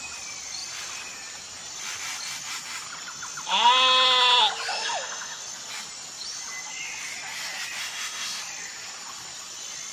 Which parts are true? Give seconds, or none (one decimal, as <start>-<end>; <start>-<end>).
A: 0.0-4.7; 5.4-7.8; 8.4-9.9